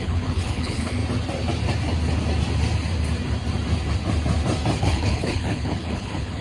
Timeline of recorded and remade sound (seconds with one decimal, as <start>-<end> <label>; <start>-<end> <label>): 0.0-1.0 remade; 1.0-4.8 recorded; 4.8-6.4 remade